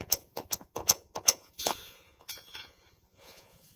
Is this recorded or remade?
remade